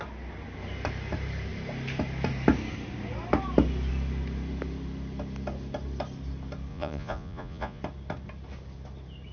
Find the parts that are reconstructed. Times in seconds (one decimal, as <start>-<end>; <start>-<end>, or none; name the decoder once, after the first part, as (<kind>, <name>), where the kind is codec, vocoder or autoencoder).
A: 6.7-7.8 (vocoder, Vocos)